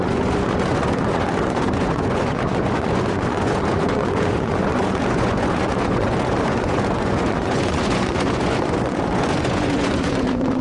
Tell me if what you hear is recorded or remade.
remade